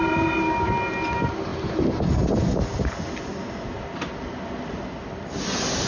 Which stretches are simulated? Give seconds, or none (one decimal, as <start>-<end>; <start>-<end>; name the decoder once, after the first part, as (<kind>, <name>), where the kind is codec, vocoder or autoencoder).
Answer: none